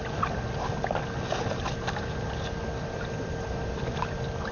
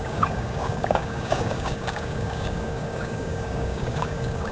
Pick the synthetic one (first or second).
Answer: second